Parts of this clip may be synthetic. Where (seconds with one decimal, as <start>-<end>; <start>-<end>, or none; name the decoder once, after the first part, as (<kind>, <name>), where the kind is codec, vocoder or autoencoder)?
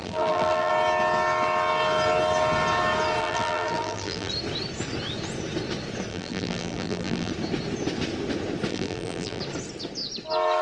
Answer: 0.0-0.7 (vocoder, BigVGAN v2); 3.2-4.3; 6.1-7.3; 8.7-9.4